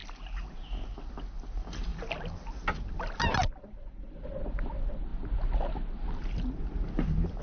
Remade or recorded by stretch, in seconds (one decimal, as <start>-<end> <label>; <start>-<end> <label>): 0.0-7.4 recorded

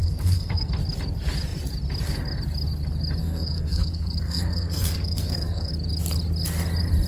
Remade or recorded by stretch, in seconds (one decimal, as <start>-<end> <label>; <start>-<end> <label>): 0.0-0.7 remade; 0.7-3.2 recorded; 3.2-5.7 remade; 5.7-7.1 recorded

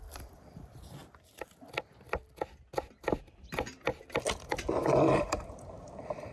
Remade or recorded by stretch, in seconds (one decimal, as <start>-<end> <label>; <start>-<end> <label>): 0.0-1.0 remade; 1.0-2.9 recorded; 2.9-6.3 remade

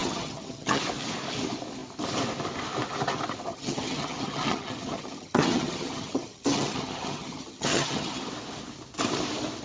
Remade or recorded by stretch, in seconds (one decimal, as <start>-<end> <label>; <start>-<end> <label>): 0.0-0.8 remade; 0.8-3.5 recorded; 3.5-8.3 remade; 8.3-9.6 recorded

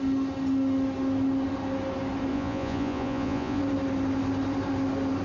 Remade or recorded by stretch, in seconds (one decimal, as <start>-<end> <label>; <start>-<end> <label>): 0.0-2.3 recorded; 2.3-3.6 remade; 3.6-5.2 recorded